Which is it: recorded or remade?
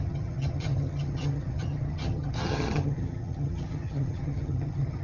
remade